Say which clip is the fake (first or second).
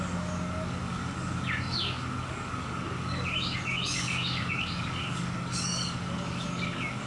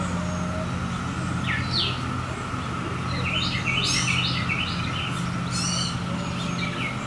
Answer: first